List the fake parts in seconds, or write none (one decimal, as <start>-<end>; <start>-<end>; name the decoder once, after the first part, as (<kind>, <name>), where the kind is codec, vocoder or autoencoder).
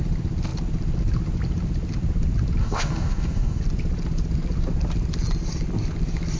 2.6-3.6 (codec, DAC)